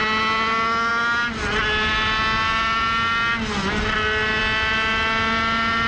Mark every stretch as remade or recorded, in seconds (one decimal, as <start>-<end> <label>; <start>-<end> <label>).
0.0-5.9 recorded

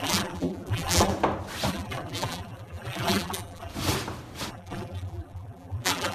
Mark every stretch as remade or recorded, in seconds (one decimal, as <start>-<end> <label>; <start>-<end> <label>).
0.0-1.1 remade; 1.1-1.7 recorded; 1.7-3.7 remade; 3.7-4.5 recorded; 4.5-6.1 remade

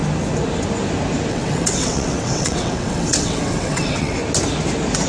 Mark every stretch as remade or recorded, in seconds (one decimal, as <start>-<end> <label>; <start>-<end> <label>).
0.0-1.3 recorded; 1.3-4.2 remade; 4.2-5.1 recorded

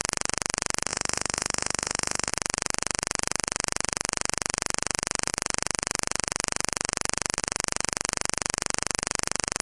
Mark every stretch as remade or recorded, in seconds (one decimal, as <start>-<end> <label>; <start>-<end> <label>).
0.0-0.9 recorded; 0.9-2.3 remade; 2.3-9.6 recorded

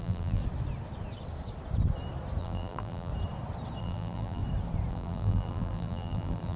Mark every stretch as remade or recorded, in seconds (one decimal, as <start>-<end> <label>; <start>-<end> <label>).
0.0-0.4 remade; 0.4-2.4 recorded; 2.4-3.1 remade; 3.1-3.8 recorded; 3.8-4.4 remade; 4.4-4.9 recorded; 4.9-6.6 remade

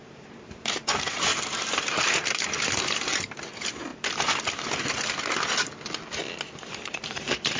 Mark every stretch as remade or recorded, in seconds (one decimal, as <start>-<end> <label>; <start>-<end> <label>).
0.0-3.9 remade; 3.9-6.6 recorded; 6.6-7.6 remade